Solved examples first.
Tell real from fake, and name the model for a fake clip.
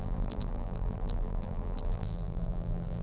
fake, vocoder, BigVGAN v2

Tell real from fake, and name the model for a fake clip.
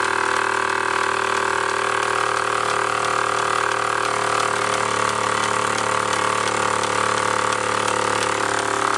real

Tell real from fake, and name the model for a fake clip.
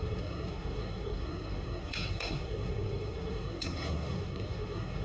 fake, codec, SNAC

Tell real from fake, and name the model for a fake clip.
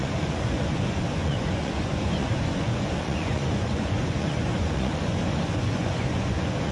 fake, vocoder, Vocos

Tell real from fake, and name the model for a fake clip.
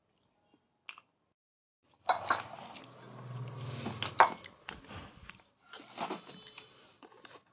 real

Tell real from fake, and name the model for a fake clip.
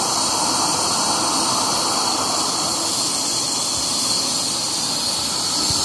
real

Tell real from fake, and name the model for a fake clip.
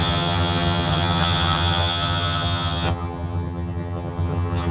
fake, vocoder, HiFi-GAN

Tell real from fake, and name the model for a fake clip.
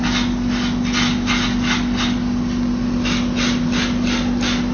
real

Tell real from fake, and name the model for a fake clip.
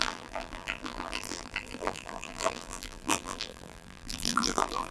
fake, vocoder, BigVGAN v2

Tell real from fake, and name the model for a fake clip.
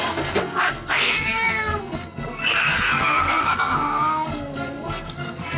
fake, codec, SNAC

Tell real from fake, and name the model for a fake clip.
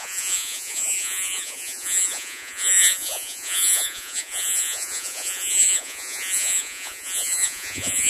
fake, vocoder, Vocos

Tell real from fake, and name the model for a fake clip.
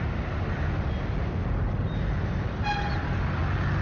real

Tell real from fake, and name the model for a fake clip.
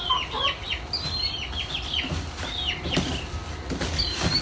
real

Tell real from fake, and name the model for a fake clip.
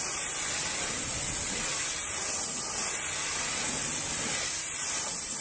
real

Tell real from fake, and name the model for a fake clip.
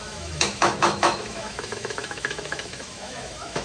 fake, autoencoder, DAC-VAE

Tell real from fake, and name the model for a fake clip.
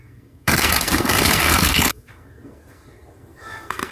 fake, codec, SNAC